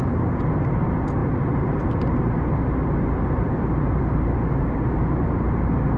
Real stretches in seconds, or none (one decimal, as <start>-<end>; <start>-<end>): none